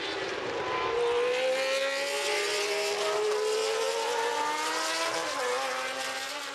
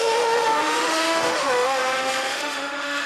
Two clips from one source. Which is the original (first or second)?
first